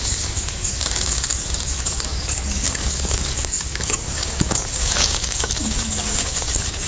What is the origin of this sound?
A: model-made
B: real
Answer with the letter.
A